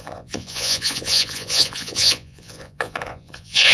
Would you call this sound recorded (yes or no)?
no